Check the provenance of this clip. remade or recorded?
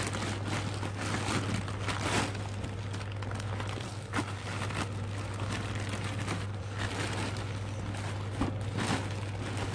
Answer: recorded